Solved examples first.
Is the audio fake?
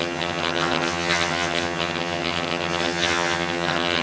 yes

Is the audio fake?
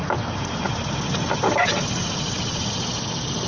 no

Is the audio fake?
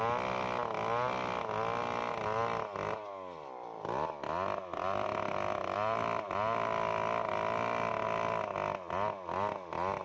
no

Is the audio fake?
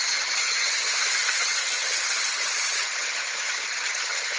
yes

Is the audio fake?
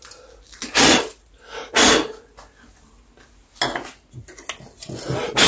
no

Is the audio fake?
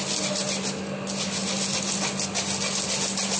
no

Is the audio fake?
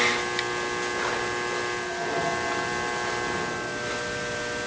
no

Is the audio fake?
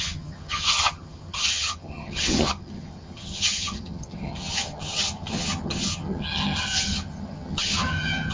yes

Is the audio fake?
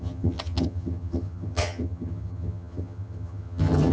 yes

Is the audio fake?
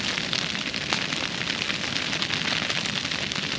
no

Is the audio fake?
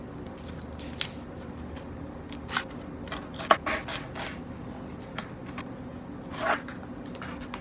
no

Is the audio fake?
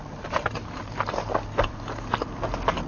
no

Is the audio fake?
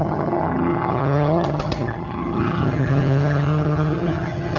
yes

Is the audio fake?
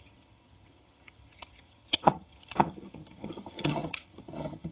yes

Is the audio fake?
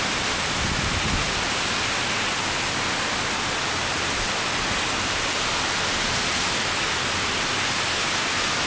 no